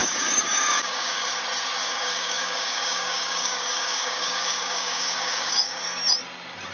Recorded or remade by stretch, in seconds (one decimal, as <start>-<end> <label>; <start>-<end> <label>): 0.0-1.3 remade; 1.3-1.8 recorded; 1.8-5.8 remade; 5.8-6.7 recorded